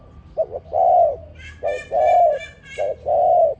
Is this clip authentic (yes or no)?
yes